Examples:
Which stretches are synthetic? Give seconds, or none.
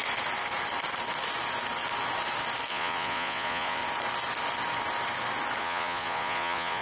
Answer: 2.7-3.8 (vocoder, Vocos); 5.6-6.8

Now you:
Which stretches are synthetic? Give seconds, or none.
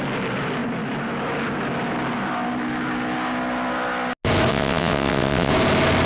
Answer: 4.5-5.5 (vocoder, WaveNeXt)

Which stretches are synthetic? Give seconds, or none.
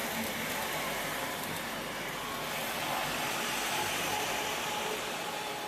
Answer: none